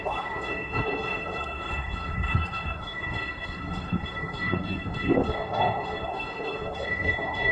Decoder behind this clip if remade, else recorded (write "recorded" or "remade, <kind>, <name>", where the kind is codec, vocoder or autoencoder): remade, codec, SNAC